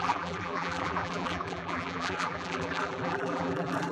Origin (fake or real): fake